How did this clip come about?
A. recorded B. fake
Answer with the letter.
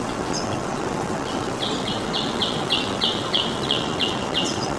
B